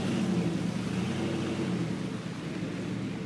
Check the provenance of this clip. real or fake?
real